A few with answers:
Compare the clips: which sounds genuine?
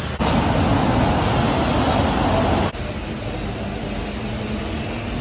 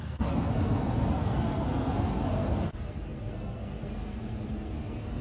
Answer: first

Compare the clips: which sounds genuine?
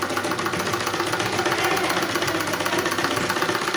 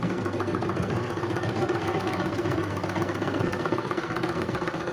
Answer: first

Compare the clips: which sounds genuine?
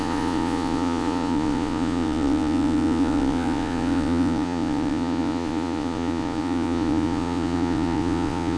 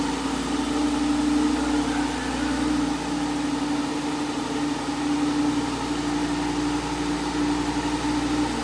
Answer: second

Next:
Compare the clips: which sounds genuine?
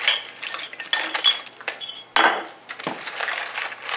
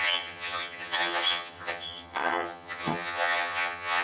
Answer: first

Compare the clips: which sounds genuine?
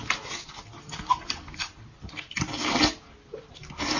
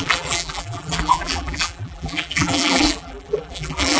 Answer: first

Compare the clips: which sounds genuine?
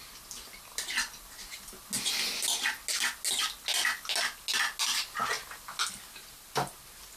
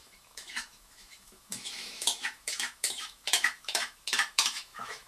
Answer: first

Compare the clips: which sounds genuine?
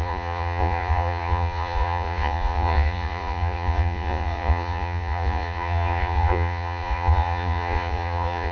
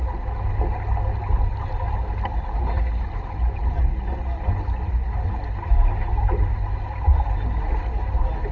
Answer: second